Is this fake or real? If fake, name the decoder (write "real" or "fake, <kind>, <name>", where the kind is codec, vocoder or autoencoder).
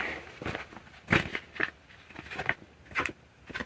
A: real